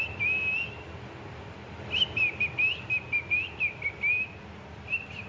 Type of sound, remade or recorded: recorded